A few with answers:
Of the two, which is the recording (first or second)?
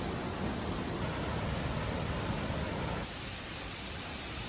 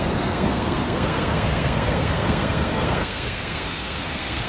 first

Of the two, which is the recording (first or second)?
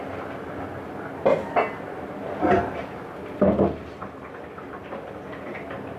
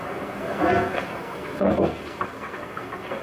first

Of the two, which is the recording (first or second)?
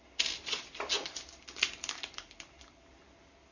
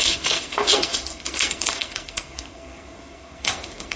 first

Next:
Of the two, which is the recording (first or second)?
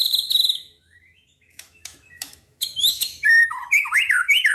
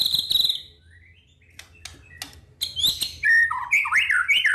second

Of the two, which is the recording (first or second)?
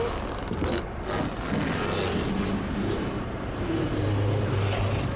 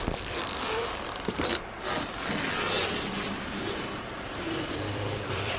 first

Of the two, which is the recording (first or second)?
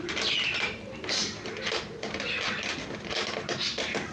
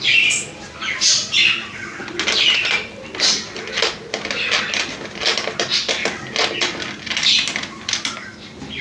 second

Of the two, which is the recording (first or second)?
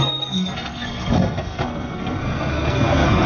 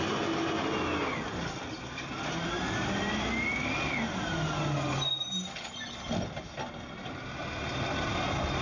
second